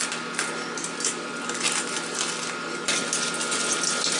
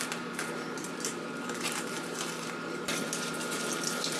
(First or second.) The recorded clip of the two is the first